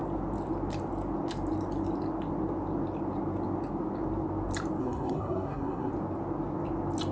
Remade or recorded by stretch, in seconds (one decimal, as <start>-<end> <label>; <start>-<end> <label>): 0.0-4.8 recorded; 4.8-5.9 remade; 5.9-7.1 recorded